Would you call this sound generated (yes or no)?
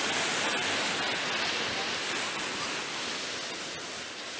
no